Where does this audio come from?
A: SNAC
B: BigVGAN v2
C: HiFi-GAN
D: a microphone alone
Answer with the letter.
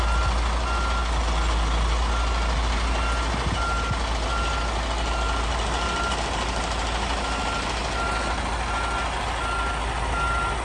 D